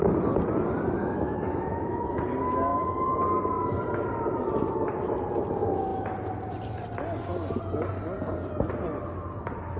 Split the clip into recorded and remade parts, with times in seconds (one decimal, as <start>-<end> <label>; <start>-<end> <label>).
0.0-1.0 recorded; 1.0-2.2 remade; 2.2-9.8 recorded